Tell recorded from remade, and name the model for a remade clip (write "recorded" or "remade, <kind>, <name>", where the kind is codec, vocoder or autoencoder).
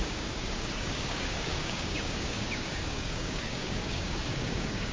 remade, codec, DAC